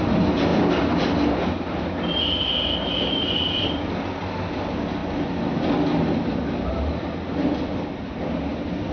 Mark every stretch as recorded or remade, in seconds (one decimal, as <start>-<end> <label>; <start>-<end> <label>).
0.0-8.9 recorded